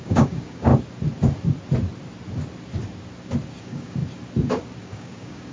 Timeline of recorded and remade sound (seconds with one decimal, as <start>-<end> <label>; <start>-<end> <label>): 0.0-0.7 remade; 0.7-3.6 recorded; 3.6-4.0 remade; 4.0-4.8 recorded; 4.8-5.5 remade